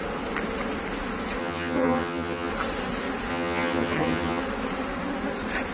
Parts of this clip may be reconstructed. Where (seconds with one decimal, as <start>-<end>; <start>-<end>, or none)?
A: 1.4-2.5; 3.3-4.4